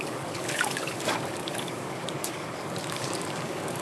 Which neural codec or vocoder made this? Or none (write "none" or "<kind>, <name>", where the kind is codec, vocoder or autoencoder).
codec, DAC